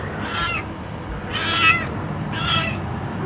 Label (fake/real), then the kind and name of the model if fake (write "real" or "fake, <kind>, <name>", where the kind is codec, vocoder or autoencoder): real